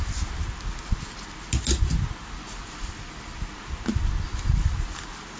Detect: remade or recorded recorded